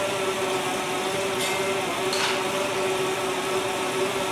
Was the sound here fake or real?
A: real